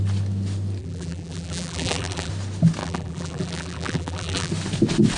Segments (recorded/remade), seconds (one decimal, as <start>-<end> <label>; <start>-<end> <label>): 0.0-0.8 recorded; 0.8-2.3 remade; 2.3-2.8 recorded; 2.8-4.5 remade; 4.5-5.2 recorded